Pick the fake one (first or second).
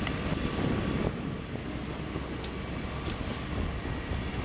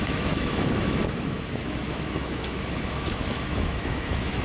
second